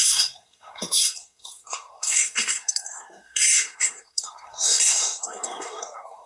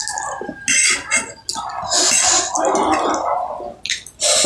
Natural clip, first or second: second